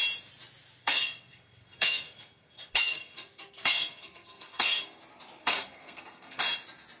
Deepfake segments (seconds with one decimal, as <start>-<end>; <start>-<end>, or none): 0.8-5.0; 5.4-6.4